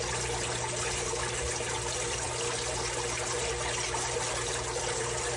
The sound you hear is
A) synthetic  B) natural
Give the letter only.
B